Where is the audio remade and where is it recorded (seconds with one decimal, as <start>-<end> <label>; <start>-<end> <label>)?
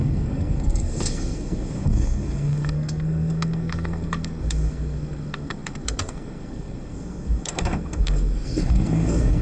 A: 0.0-9.4 remade